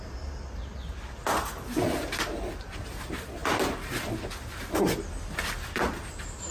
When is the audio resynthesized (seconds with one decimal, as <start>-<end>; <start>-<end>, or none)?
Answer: none